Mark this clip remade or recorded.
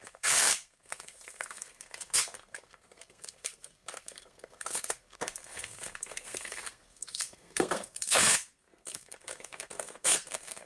remade